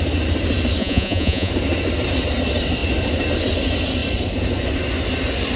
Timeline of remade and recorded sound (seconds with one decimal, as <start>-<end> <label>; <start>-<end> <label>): 0.0-0.8 recorded; 0.8-1.5 remade; 1.5-5.6 recorded